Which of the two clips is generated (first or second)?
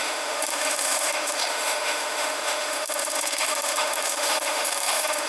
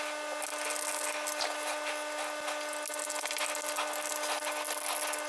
first